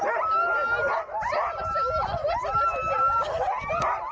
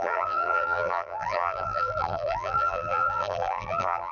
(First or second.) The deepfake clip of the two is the second